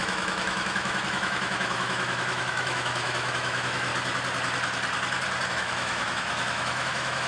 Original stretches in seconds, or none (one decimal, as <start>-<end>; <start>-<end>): 3.9-5.5